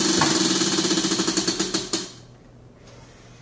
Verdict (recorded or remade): recorded